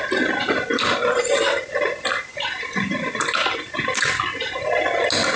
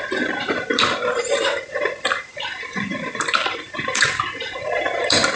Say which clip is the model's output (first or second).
second